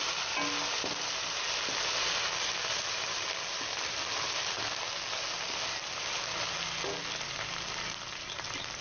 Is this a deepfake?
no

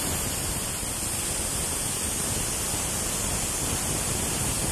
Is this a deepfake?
no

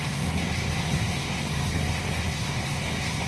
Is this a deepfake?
yes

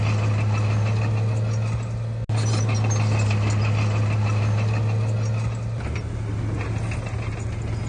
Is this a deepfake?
no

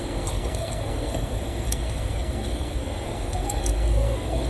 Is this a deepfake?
yes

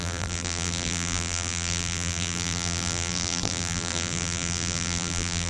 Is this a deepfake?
yes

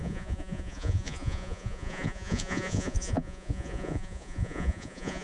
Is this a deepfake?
yes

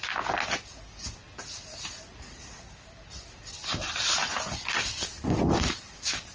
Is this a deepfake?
no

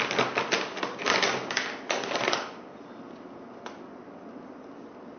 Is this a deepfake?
no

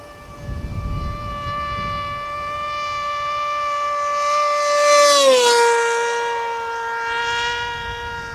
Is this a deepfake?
no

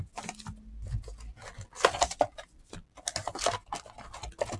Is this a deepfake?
no